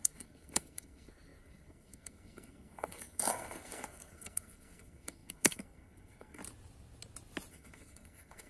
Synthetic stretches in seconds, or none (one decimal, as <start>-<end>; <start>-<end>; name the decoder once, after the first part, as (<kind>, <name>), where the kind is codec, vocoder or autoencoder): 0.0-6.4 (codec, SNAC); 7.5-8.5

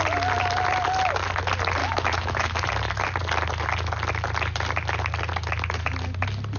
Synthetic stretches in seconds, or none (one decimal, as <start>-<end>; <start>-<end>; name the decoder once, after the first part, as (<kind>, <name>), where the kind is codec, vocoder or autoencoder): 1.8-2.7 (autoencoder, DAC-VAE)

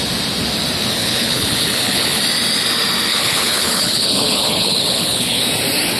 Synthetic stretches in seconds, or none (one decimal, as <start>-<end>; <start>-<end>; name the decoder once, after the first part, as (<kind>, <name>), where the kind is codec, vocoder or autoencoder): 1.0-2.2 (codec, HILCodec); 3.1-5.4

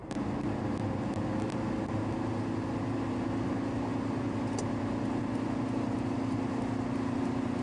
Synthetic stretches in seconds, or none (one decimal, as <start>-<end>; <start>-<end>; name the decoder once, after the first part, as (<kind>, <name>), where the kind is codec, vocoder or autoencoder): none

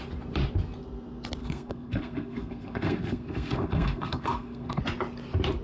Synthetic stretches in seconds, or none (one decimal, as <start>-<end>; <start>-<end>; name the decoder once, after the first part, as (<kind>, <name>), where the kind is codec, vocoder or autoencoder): 1.4-4.8 (codec, SNAC)